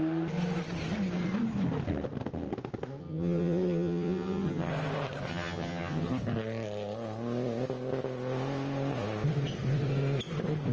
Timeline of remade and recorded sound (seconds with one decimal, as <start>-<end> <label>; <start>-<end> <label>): 0.0-3.0 recorded; 3.0-4.7 remade; 4.7-5.3 recorded; 5.3-6.1 remade; 6.1-10.7 recorded

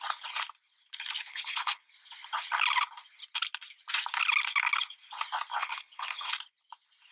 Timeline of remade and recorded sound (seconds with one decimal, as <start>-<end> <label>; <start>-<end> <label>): 0.0-1.3 recorded; 1.3-1.9 remade; 1.9-5.6 recorded; 5.6-6.3 remade; 6.3-7.1 recorded